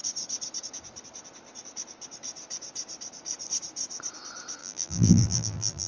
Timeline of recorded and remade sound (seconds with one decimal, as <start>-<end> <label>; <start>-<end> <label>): 0.0-4.6 recorded; 4.6-5.9 remade